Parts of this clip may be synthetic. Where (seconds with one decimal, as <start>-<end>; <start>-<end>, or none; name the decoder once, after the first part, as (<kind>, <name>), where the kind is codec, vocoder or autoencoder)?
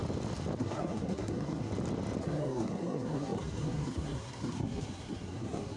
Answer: 0.6-1.7 (codec, SNAC); 2.2-5.8